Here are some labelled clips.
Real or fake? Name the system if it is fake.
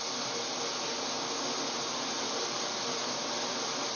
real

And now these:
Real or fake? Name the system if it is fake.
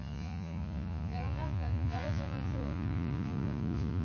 fake, vocoder, Vocos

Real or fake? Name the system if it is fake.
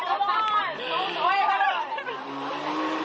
fake, vocoder, BigVGAN v2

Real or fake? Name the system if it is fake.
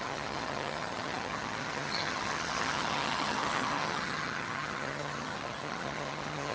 fake, vocoder, HiFi-GAN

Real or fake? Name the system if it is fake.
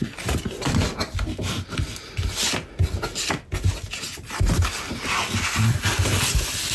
real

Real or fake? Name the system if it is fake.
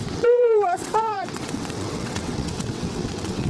fake, vocoder, WaveNeXt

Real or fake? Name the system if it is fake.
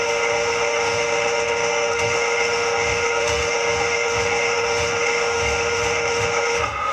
fake, autoencoder, DAC-VAE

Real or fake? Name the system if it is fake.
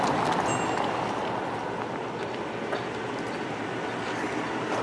real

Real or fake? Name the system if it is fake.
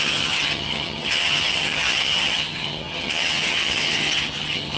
fake, vocoder, HiFi-GAN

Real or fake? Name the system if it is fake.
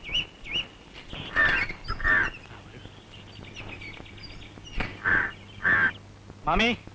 real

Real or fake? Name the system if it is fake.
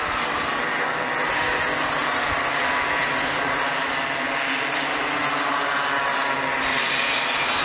real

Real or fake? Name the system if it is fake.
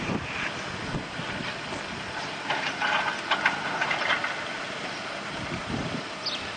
real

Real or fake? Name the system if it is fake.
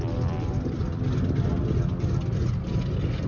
real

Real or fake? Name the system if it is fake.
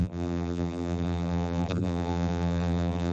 fake, vocoder, BigVGAN v2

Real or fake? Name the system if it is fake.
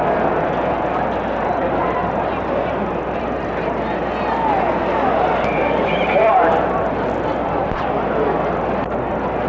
real